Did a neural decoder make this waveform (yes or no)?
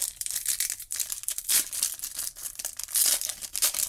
yes